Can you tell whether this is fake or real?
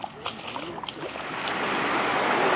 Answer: real